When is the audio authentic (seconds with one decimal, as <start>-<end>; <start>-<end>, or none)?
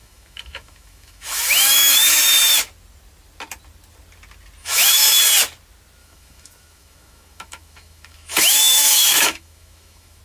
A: 2.2-4.6; 5.2-6.0